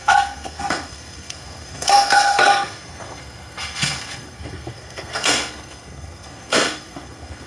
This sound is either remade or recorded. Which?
remade